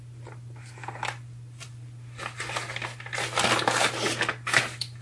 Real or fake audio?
real